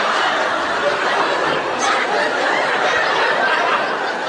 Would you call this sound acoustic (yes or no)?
yes